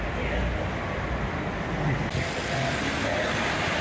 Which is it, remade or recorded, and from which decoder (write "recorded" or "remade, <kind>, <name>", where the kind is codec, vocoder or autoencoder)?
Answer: recorded